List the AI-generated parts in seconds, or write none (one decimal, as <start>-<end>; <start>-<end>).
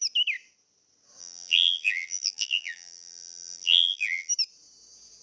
1.2-4.3